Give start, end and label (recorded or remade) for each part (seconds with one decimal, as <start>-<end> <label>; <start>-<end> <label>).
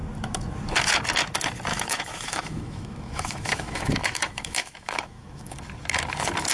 0.0-1.7 recorded; 1.7-5.6 remade; 5.6-6.5 recorded